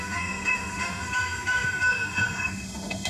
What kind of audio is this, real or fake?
fake